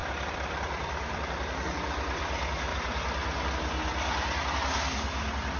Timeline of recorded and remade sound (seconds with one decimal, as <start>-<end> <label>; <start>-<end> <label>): 0.0-2.2 remade; 2.2-2.7 recorded; 2.7-3.5 remade; 3.5-5.6 recorded